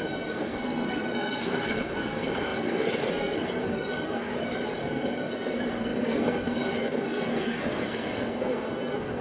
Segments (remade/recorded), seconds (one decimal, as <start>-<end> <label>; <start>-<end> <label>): 0.0-4.3 remade; 4.3-4.8 recorded; 4.8-9.2 remade